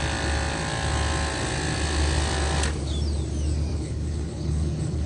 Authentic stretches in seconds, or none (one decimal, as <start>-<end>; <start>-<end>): 0.0-3.7